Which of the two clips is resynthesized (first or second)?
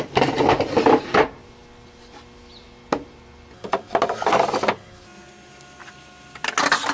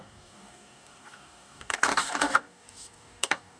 second